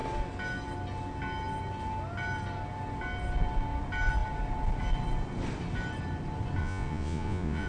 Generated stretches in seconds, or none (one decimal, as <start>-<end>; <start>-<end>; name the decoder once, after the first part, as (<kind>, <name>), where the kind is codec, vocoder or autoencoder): 6.6-7.7 (vocoder, Vocos)